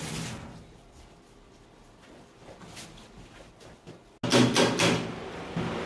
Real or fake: real